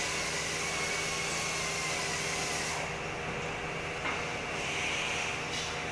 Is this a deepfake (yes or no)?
no